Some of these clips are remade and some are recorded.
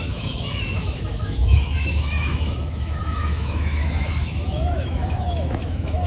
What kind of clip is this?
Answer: remade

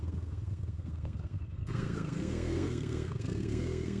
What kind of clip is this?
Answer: remade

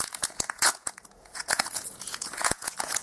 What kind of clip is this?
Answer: remade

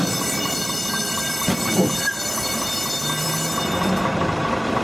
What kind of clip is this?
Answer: remade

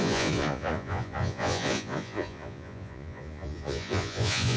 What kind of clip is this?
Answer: remade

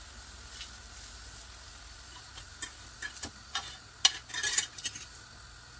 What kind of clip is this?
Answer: recorded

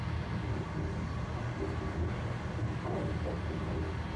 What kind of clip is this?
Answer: recorded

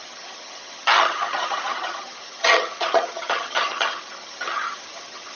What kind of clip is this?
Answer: remade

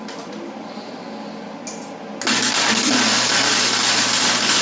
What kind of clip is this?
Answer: recorded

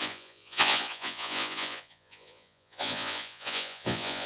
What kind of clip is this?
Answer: remade